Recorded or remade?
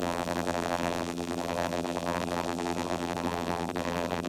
remade